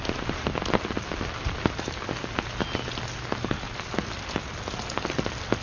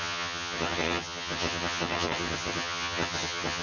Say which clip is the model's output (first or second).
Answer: second